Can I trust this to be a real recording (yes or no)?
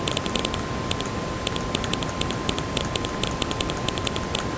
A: yes